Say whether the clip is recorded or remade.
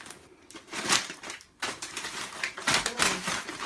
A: remade